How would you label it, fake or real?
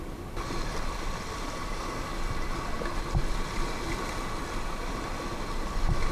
real